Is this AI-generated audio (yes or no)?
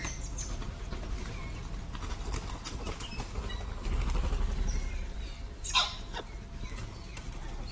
no